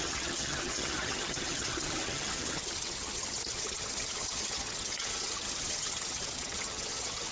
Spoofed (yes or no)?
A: yes